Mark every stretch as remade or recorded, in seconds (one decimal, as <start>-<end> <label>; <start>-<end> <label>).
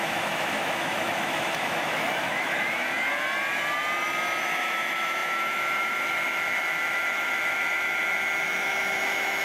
0.0-2.9 remade; 2.9-4.4 recorded; 4.4-9.4 remade